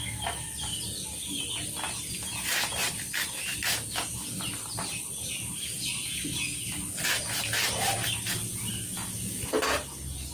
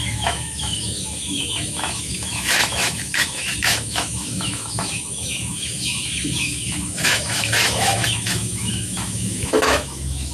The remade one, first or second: second